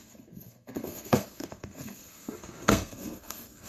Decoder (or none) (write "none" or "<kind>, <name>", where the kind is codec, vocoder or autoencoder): codec, SNAC